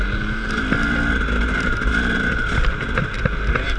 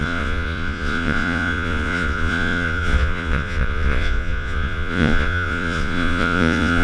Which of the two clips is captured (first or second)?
first